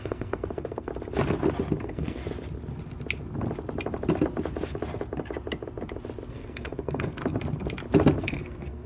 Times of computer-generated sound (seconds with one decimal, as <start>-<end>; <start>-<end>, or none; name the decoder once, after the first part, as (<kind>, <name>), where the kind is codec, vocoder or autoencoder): 0.0-0.9 (codec, SNAC); 1.8-2.2; 6.3-7.2; 8.2-8.9